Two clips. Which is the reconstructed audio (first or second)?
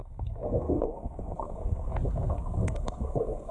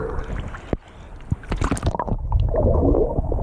first